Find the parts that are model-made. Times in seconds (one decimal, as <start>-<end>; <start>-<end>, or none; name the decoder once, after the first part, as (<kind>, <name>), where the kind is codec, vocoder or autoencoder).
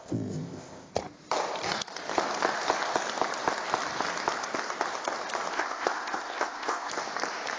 0.0-0.9 (codec, ZipCodec); 5.5-6.9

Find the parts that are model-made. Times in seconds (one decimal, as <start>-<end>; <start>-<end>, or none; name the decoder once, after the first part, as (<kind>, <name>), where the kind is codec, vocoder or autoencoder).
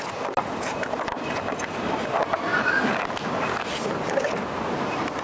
none